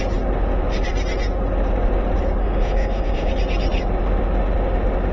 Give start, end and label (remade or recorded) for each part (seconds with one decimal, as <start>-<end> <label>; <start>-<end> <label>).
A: 0.0-2.4 recorded; 2.4-3.3 remade; 3.3-5.1 recorded